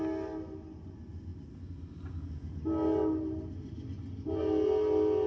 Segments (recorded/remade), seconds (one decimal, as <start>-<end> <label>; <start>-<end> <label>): 0.0-5.3 recorded